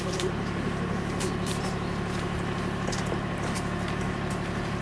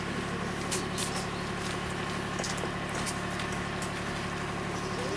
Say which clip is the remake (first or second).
first